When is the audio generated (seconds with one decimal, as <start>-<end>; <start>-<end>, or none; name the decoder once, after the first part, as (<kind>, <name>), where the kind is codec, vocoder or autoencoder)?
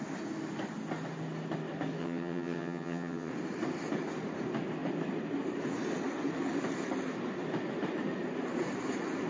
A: 2.0-3.3 (vocoder, HiFi-GAN)